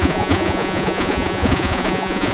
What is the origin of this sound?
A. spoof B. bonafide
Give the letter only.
A